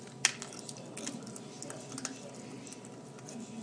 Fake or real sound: real